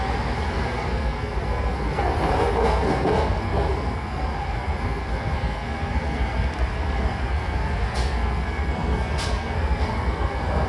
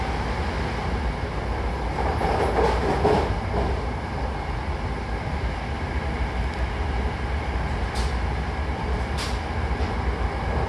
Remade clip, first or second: first